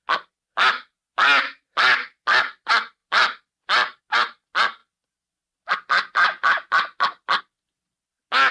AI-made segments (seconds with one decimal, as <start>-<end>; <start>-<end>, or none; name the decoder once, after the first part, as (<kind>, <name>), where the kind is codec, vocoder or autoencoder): none